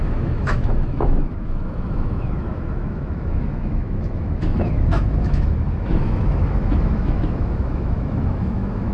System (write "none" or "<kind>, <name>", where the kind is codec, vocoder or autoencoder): autoencoder, DAC-VAE